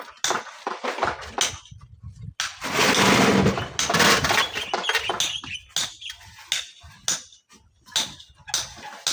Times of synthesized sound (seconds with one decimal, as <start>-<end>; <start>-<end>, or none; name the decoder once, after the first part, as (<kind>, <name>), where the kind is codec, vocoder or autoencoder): none